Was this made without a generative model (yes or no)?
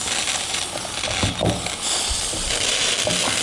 yes